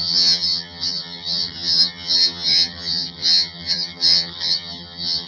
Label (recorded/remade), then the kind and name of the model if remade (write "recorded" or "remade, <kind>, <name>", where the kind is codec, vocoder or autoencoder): remade, vocoder, HiFi-GAN